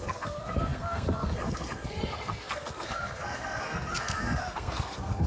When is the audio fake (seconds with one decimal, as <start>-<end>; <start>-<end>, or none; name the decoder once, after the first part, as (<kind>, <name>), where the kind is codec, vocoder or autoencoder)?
0.0-5.3 (codec, SNAC)